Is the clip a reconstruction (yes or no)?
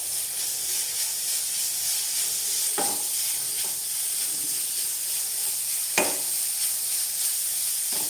no